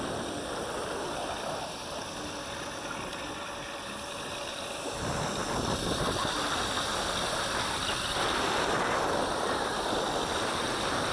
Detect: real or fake real